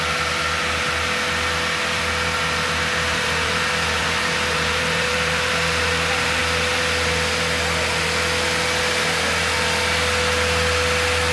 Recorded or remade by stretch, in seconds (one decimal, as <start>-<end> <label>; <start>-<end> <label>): 0.0-4.0 recorded; 4.0-6.4 remade; 6.4-11.3 recorded